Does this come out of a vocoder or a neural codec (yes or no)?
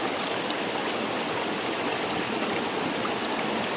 no